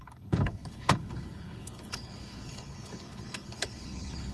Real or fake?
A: fake